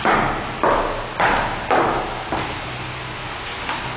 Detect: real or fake real